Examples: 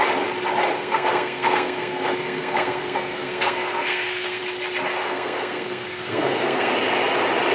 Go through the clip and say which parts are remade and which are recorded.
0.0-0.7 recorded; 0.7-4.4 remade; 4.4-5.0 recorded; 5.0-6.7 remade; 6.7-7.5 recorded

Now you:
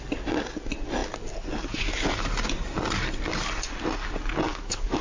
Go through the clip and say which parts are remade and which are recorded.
0.0-4.5 recorded; 4.5-5.0 remade

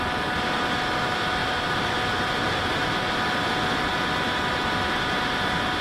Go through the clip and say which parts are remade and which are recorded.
0.0-1.4 recorded; 1.4-3.5 remade; 3.5-5.8 recorded

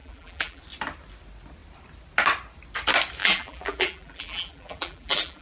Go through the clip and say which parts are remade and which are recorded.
0.0-0.6 remade; 0.6-3.2 recorded; 3.2-5.4 remade

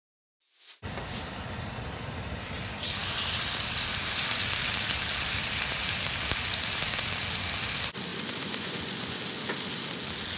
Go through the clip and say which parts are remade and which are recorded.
0.0-8.1 recorded; 8.1-9.2 remade; 9.2-10.4 recorded

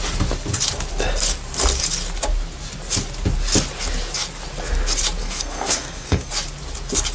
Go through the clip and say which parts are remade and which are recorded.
0.0-5.2 recorded; 5.2-6.3 remade; 6.3-7.1 recorded

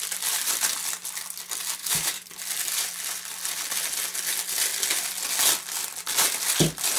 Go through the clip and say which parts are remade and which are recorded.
0.0-1.8 recorded; 1.8-2.3 remade; 2.3-7.0 recorded

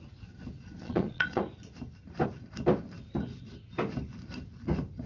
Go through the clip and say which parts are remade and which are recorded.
0.0-0.8 recorded; 0.8-1.4 remade; 1.4-5.1 recorded